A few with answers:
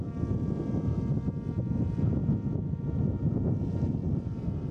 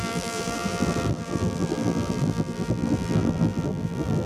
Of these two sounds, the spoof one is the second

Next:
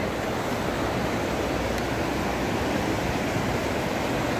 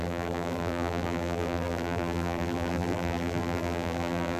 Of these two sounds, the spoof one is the second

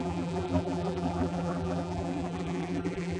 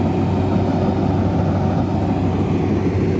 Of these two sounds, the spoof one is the first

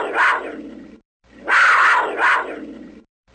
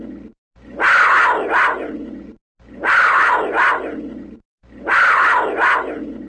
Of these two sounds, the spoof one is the first